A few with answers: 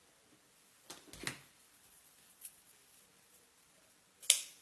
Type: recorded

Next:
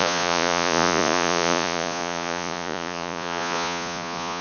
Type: remade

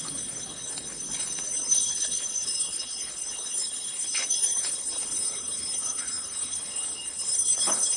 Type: remade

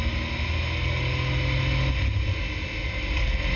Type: recorded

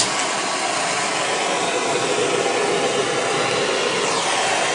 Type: recorded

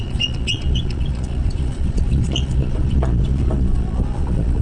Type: remade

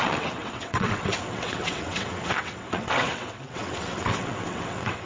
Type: remade